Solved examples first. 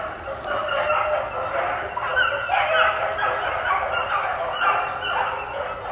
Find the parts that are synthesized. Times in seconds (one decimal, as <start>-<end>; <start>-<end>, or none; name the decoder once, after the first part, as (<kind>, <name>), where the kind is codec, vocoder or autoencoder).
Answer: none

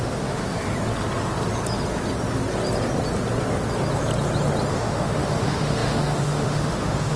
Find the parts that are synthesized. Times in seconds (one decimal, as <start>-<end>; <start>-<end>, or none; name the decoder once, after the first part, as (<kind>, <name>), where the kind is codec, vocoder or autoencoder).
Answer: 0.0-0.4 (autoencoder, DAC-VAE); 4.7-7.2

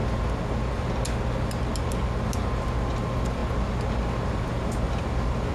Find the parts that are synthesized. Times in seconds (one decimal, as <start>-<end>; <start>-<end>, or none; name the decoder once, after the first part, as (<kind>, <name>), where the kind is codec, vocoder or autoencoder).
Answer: none

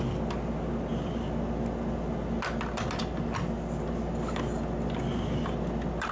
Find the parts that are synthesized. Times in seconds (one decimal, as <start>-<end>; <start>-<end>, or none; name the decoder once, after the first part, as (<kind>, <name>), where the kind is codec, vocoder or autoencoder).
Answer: none

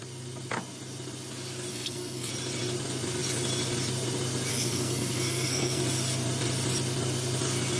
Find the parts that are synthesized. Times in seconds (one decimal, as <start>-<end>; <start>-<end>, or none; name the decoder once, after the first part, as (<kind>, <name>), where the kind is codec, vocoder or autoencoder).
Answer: 1.7-2.3 (codec, SNAC); 4.5-5.8